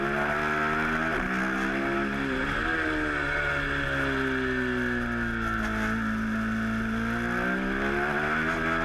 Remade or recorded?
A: recorded